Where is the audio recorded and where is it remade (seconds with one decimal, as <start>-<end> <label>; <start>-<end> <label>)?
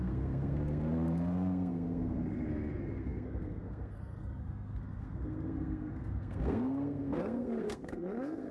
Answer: 0.0-8.5 remade